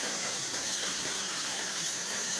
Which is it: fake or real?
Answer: fake